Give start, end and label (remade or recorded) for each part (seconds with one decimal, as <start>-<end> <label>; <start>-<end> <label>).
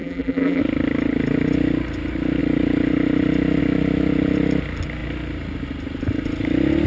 0.0-0.6 remade; 0.6-6.9 recorded